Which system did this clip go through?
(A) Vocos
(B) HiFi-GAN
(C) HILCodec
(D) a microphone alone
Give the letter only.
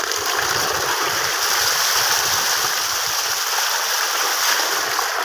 D